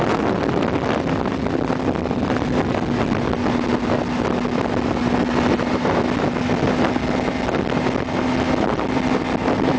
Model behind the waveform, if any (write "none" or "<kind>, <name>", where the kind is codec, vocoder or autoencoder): none